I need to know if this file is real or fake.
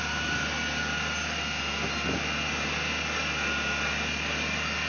real